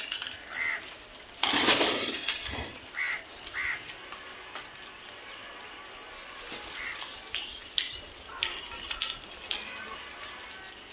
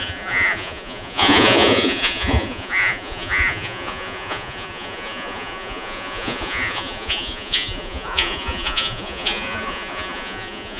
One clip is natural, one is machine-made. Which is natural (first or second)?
first